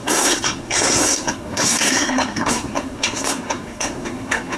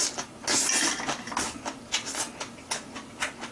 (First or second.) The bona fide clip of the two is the second